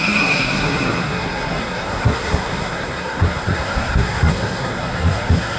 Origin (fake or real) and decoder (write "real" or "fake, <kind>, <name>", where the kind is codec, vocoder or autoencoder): fake, codec, SNAC